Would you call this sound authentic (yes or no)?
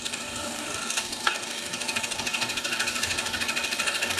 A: no